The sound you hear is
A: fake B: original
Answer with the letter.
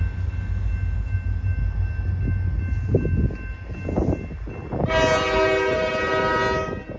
B